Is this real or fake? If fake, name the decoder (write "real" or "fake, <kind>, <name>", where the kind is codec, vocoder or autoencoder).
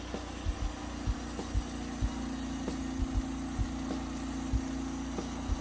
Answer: real